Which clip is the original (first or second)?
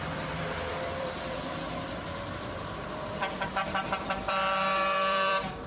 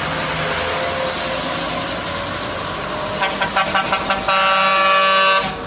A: second